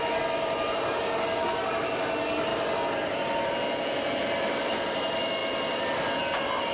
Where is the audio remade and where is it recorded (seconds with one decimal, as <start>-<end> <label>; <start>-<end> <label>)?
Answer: 0.0-6.7 recorded